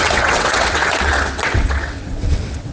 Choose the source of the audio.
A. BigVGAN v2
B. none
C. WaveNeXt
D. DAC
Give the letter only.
C